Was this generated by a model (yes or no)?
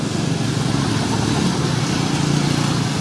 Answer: no